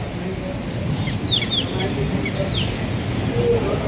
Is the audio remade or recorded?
recorded